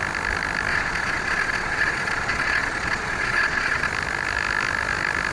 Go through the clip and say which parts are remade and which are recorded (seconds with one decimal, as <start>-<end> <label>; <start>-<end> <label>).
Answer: 0.0-0.7 recorded; 0.7-3.9 remade; 3.9-5.3 recorded